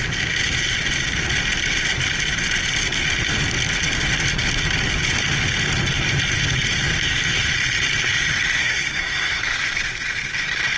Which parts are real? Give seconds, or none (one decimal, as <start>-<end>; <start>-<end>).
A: 0.0-8.6; 9.4-10.8

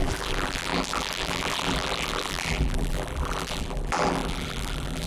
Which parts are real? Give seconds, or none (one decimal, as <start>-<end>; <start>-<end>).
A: none